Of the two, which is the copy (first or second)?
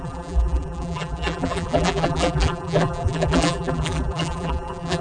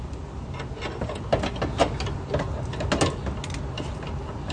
first